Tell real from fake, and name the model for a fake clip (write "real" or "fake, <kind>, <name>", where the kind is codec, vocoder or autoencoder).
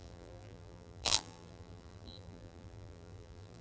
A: fake, vocoder, BigVGAN v2